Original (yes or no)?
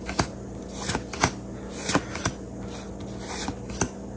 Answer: yes